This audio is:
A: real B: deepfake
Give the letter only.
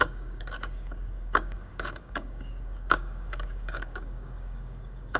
B